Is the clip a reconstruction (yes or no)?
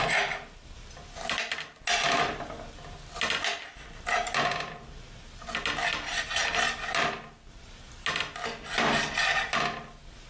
no